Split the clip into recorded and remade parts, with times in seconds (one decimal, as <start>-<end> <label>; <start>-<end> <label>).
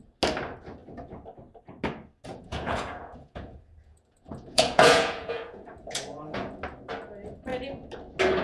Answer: 0.0-2.3 recorded; 2.3-6.5 remade; 6.5-8.4 recorded